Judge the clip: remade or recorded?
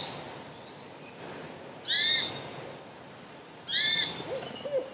recorded